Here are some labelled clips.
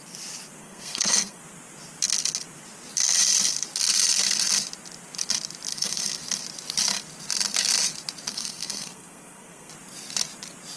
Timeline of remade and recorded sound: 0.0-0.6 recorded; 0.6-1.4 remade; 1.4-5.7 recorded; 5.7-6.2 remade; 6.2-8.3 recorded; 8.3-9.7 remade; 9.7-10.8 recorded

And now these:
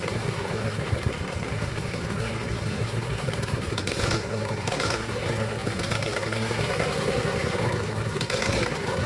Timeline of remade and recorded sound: 0.0-9.1 remade

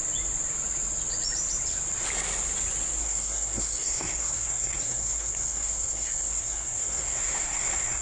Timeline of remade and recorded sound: 0.0-3.0 recorded; 3.0-8.0 remade

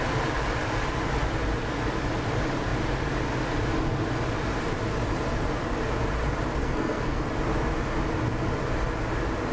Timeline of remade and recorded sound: 0.0-6.6 recorded; 6.6-7.2 remade; 7.2-9.5 recorded